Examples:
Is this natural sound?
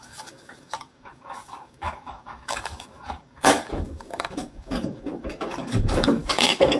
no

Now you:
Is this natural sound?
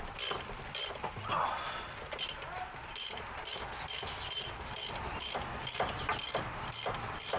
no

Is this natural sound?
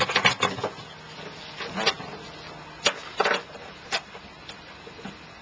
yes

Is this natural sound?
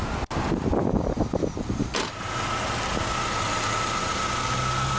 yes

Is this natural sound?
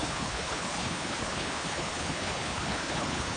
no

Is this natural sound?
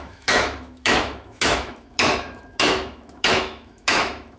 no